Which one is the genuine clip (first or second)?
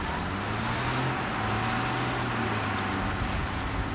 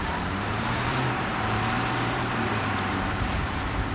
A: first